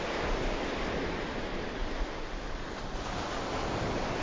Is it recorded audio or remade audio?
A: recorded